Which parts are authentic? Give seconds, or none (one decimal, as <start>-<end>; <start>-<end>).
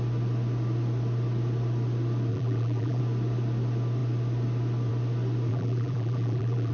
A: 0.0-2.3; 3.0-5.5